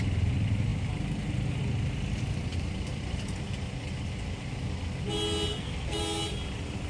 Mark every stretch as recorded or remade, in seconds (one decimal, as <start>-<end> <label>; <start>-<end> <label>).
0.0-5.5 recorded; 5.5-6.0 remade; 6.0-6.9 recorded